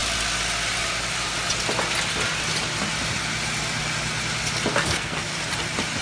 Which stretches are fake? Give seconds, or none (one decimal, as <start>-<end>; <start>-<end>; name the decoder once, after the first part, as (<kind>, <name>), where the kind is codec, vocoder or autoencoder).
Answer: 4.7-5.3 (codec, SNAC)